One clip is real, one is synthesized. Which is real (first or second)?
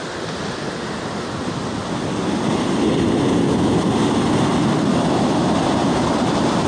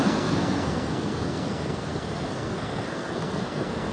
first